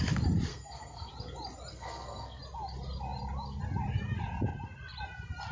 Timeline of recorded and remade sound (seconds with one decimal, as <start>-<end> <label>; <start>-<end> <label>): 0.0-0.5 recorded; 0.5-1.1 remade; 1.1-1.7 recorded; 1.7-2.4 remade; 2.4-5.5 recorded